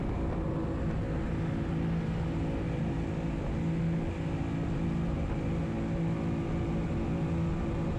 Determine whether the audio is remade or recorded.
recorded